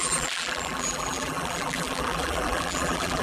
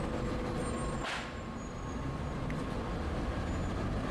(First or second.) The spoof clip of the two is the first